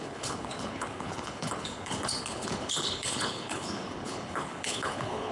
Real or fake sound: fake